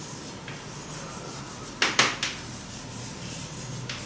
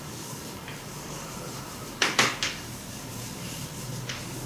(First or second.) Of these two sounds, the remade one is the second